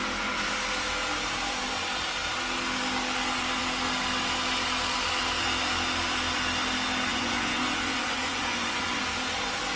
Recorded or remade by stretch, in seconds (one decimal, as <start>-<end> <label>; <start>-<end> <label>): 0.0-7.1 recorded; 7.1-9.0 remade; 9.0-9.8 recorded